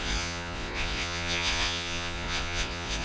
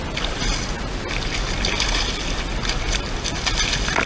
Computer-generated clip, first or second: first